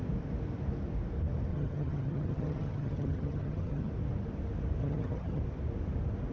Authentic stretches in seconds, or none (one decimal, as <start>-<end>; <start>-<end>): 0.0-1.5; 3.9-4.8; 5.4-6.3